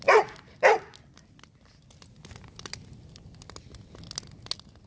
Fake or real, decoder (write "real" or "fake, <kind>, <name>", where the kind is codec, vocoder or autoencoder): real